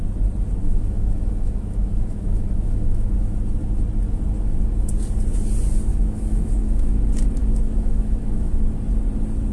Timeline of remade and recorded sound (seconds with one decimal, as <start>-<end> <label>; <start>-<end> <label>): 0.0-0.6 recorded; 0.6-3.3 remade; 3.3-5.9 recorded; 5.9-7.0 remade; 7.0-7.4 recorded; 7.4-8.5 remade; 8.5-9.5 recorded